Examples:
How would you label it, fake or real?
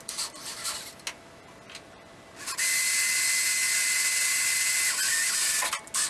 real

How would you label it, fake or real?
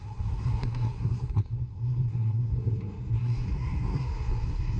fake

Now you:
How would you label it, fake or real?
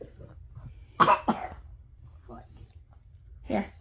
real